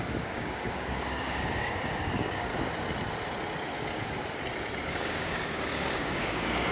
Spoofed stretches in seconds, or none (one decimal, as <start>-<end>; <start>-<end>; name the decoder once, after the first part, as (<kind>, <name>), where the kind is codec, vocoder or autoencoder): 0.0-2.5 (codec, DAC); 4.9-6.7

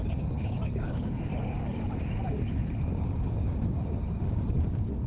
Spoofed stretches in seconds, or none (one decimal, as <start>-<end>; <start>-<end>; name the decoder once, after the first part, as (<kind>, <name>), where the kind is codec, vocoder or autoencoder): 0.0-1.3 (codec, DAC); 3.0-5.1

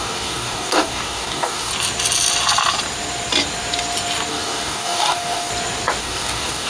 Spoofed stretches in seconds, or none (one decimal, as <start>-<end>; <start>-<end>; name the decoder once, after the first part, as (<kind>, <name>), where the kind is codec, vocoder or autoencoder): 0.0-1.7 (codec, DAC); 4.3-5.5; 6.0-6.7

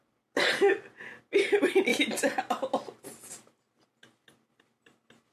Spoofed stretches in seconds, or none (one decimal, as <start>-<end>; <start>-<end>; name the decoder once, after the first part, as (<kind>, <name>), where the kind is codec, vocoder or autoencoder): none

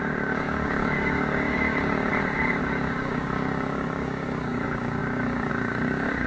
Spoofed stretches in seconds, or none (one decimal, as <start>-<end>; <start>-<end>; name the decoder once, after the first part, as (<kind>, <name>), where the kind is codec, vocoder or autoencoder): 0.0-2.1 (codec, DAC); 2.6-6.3

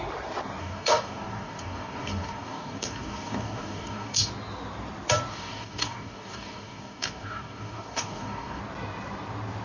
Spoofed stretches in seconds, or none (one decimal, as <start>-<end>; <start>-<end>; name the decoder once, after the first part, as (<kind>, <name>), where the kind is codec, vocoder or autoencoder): 0.6-4.3 (codec, DAC); 5.3-8.6